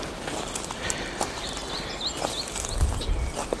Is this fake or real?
real